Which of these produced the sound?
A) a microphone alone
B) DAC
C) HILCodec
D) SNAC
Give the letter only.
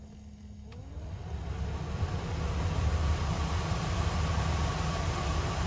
A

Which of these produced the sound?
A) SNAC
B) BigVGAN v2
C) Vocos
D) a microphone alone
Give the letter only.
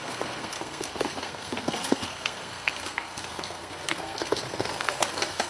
A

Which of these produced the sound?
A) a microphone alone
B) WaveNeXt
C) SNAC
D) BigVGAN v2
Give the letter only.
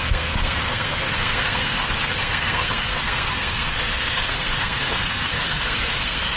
C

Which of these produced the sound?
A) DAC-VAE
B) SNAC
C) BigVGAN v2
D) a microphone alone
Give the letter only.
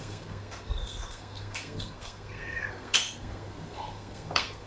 B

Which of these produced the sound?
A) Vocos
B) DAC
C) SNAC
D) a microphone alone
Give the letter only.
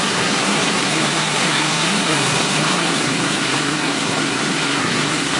C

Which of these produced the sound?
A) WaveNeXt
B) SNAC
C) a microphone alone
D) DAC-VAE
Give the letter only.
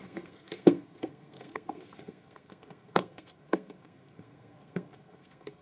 B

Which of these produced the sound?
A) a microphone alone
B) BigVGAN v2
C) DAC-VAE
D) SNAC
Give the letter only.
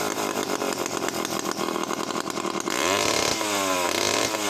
A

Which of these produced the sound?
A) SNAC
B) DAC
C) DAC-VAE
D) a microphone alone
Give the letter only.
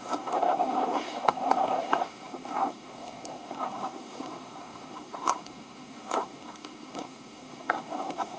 A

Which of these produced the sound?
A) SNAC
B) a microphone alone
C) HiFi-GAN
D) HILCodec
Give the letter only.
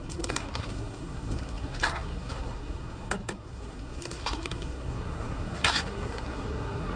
A